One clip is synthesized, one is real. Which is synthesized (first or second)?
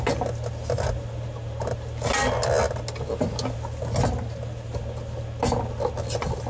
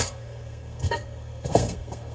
second